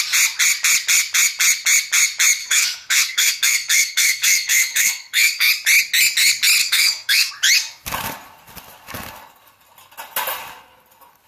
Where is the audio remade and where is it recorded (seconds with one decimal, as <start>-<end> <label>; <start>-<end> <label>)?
0.0-2.4 recorded; 2.4-5.5 remade; 5.5-6.6 recorded; 6.6-7.3 remade; 7.3-11.3 recorded